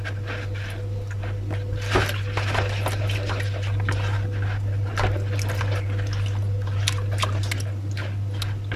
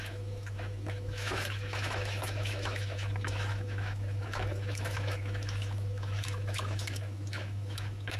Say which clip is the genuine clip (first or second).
first